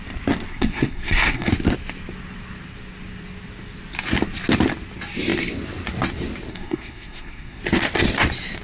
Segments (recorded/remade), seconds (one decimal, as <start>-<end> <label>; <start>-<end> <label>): 0.0-0.5 recorded; 0.5-1.5 remade; 1.5-6.5 recorded; 6.5-7.6 remade; 7.6-8.6 recorded